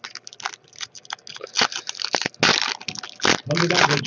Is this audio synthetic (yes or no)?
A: no